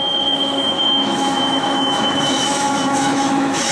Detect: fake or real fake